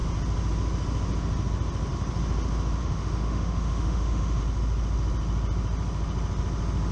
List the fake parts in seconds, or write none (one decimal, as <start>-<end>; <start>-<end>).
2.8-4.4